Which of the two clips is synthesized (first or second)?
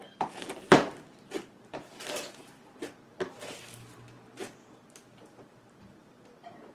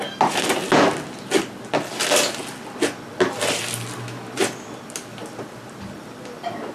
first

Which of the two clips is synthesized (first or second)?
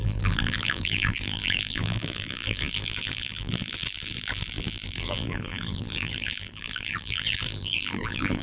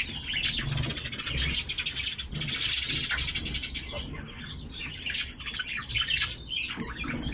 first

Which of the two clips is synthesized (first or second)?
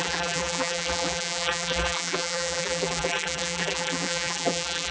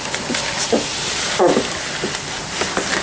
first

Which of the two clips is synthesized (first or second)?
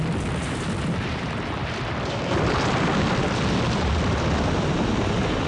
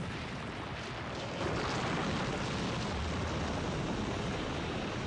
first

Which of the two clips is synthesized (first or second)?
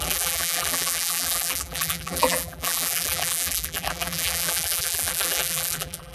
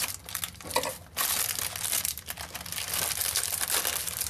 first